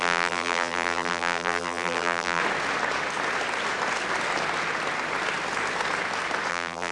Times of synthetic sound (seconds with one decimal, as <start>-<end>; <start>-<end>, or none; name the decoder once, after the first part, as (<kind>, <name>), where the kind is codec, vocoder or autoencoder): 0.0-2.4 (vocoder, BigVGAN v2); 6.5-6.9